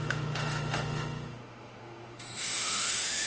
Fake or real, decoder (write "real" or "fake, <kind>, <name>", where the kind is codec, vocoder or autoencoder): fake, autoencoder, DAC-VAE